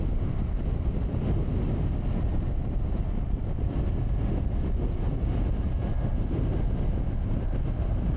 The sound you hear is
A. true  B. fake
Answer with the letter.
A